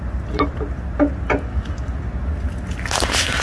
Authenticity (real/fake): real